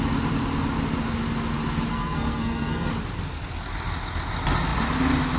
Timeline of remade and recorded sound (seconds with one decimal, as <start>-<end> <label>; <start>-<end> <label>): 0.0-1.9 recorded; 1.9-2.9 remade; 2.9-5.4 recorded